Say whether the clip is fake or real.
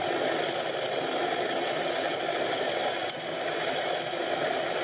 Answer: real